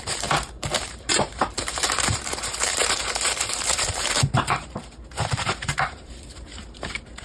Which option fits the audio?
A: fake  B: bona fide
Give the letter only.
A